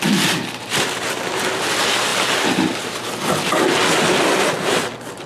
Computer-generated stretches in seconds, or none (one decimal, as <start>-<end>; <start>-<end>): none